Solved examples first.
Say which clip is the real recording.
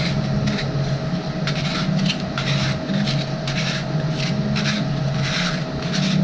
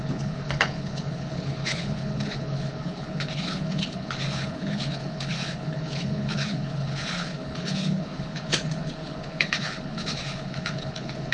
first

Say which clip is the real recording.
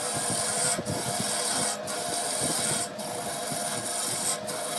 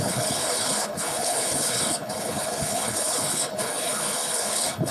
first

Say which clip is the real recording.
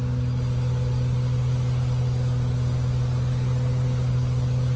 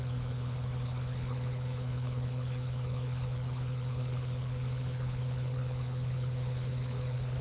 first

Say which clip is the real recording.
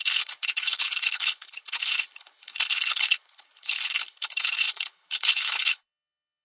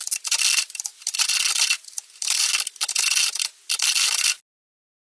second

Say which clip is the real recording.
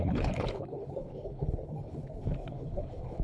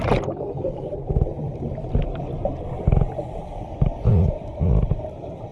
second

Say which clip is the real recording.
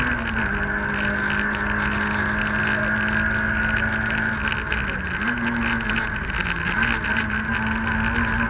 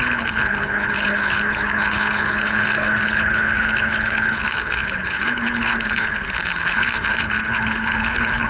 first